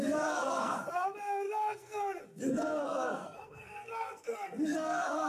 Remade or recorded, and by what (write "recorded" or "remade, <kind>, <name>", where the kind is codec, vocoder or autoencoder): remade, codec, SNAC